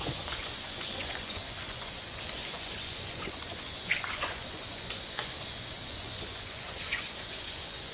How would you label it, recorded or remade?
remade